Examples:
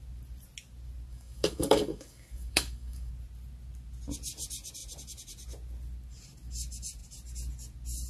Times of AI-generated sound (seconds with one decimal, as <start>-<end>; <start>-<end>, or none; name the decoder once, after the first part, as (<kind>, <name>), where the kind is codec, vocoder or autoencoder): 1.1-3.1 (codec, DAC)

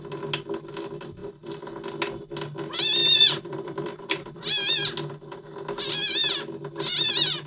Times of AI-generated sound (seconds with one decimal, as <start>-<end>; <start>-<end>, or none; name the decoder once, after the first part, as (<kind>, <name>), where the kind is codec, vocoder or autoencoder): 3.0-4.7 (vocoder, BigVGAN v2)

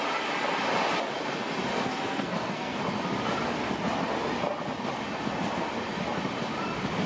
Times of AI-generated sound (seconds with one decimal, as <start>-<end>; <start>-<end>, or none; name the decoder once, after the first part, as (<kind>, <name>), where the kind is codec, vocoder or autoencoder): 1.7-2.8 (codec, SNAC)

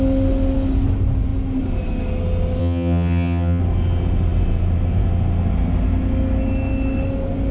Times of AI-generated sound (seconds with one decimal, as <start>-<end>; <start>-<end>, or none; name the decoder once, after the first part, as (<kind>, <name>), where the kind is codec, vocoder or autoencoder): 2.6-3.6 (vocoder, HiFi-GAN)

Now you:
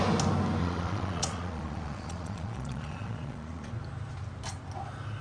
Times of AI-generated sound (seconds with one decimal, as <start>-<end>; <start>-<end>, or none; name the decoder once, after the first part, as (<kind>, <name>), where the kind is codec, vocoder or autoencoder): 0.6-3.7 (vocoder, Vocos)